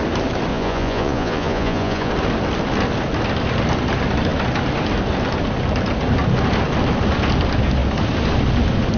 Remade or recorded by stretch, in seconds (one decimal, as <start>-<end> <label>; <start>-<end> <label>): 0.0-0.5 recorded; 0.5-2.1 remade; 2.1-9.0 recorded